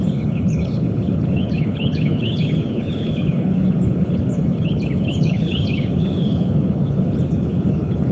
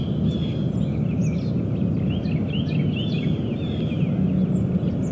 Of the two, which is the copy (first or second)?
first